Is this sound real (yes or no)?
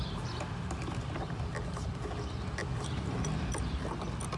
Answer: yes